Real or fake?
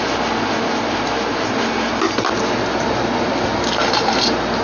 real